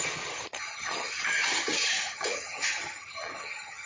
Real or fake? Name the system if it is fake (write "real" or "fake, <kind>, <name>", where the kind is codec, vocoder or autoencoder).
fake, vocoder, HiFi-GAN